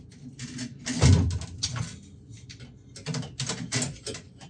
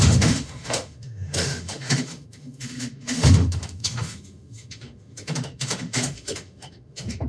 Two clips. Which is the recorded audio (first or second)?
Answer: first